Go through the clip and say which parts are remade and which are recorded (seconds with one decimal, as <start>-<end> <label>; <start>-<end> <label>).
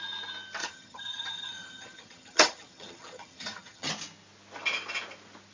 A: 0.0-0.6 recorded; 0.6-3.9 remade; 3.9-5.5 recorded